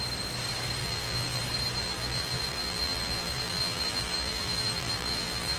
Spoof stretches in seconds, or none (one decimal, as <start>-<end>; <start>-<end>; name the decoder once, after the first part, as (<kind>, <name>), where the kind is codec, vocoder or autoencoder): 0.8-1.4 (vocoder, BigVGAN v2); 1.8-5.6